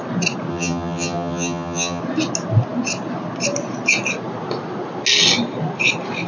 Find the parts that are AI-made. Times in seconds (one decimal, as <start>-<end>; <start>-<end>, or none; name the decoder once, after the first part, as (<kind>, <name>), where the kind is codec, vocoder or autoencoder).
0.5-2.0 (vocoder, HiFi-GAN)

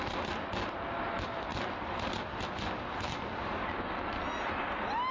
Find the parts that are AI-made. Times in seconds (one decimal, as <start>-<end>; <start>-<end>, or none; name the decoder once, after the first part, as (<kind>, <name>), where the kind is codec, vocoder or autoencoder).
none